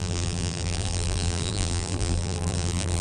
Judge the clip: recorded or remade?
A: remade